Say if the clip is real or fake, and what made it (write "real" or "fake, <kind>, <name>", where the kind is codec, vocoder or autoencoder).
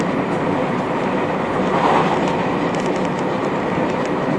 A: real